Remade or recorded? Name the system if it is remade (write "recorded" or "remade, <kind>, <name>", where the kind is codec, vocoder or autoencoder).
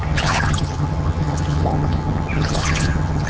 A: remade, vocoder, HiFi-GAN